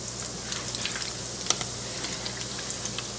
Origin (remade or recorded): recorded